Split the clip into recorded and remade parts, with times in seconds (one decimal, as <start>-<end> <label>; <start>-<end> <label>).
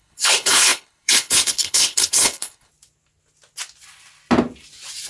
0.0-2.7 remade; 2.7-5.1 recorded